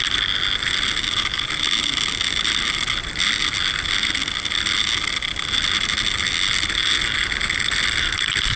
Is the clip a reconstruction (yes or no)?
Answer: no